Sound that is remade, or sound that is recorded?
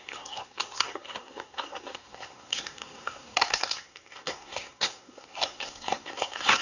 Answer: remade